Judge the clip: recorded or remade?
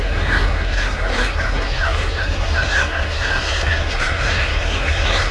remade